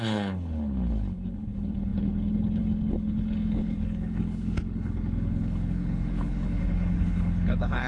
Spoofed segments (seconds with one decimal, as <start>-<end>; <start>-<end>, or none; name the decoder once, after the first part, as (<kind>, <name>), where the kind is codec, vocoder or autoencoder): 0.0-7.9 (codec, HILCodec)